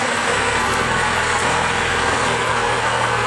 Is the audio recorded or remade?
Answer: remade